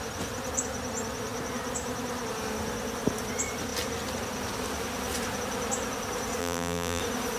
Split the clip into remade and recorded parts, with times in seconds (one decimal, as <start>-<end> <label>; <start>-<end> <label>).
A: 0.0-6.4 recorded; 6.4-7.0 remade; 7.0-7.4 recorded